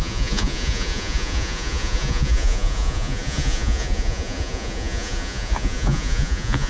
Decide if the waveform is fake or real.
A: fake